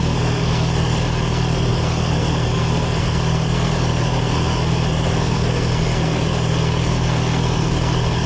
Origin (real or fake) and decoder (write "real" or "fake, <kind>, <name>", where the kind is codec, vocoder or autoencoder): fake, codec, SNAC